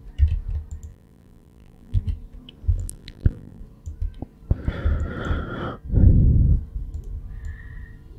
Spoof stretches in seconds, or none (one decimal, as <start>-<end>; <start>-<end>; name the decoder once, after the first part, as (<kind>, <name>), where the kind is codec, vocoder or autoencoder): 0.9-2.0 (vocoder, BigVGAN v2); 2.7-3.6